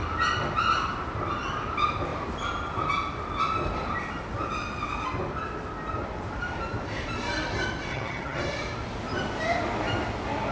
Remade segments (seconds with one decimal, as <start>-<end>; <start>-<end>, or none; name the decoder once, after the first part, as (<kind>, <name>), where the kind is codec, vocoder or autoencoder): 7.9-8.4 (vocoder, HiFi-GAN)